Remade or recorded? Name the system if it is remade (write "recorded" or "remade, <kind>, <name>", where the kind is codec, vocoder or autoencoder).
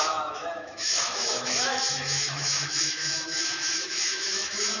remade, autoencoder, DAC-VAE